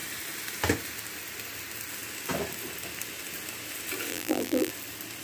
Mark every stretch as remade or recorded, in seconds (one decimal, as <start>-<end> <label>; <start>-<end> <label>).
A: 0.0-4.1 recorded; 4.1-4.7 remade; 4.7-5.2 recorded